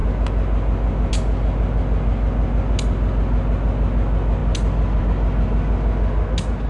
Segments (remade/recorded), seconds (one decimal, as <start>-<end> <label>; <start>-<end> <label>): 0.0-6.7 recorded